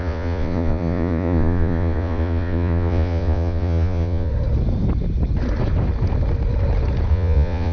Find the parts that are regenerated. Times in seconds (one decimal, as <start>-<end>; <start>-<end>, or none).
0.0-4.3; 7.1-7.7